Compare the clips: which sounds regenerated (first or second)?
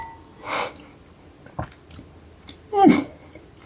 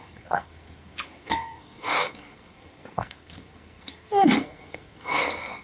second